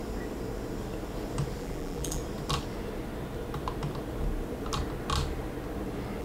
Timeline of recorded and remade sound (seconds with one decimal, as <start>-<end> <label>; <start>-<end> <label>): 0.0-1.6 recorded; 1.6-2.2 remade; 2.2-6.2 recorded